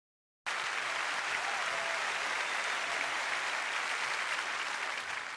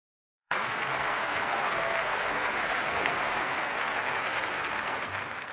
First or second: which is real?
first